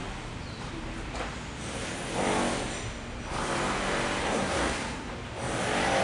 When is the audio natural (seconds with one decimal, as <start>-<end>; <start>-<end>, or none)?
0.0-4.2; 5.1-6.0